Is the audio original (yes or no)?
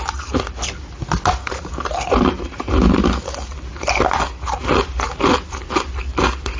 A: yes